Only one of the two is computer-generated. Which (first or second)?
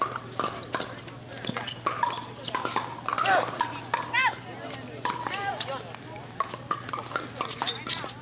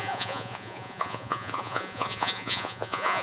second